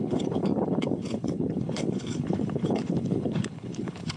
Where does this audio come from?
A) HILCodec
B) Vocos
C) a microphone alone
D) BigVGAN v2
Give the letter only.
A